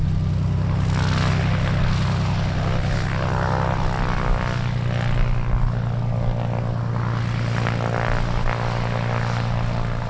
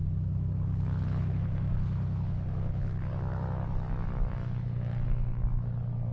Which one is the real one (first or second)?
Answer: first